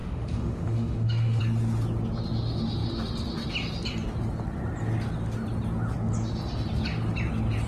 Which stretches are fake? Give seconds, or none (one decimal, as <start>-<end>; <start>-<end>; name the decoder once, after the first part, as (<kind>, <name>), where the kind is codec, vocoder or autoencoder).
0.0-1.4 (autoencoder, DAC-VAE)